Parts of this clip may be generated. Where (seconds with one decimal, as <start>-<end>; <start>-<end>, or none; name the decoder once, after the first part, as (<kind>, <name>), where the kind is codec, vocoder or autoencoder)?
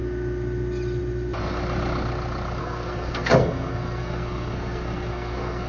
2.6-5.7 (codec, SNAC)